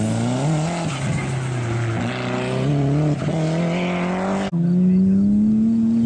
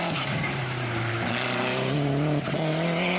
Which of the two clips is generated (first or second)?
second